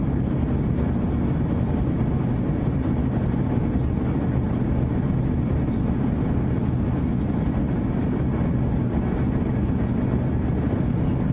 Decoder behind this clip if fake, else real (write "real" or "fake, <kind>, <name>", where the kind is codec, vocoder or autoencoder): real